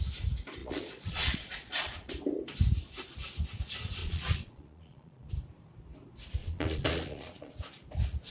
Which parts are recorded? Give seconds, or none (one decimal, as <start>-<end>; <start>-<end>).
0.0-0.6; 2.1-4.0; 5.3-6.4; 7.5-8.3